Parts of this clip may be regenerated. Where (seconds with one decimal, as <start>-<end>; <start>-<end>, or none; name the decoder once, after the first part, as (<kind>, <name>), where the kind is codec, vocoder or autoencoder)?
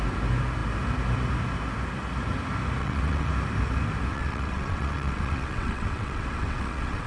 2.8-3.3 (vocoder, WaveNeXt); 4.1-7.1